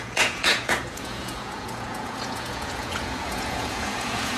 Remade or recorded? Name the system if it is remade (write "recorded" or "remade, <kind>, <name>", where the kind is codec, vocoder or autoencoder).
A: remade, vocoder, Vocos